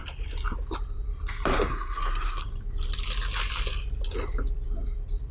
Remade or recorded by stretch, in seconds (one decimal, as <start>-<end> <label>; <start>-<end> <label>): 0.0-1.7 recorded; 1.7-2.4 remade; 2.4-5.3 recorded